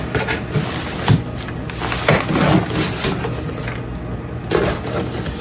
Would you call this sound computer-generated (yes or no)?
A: no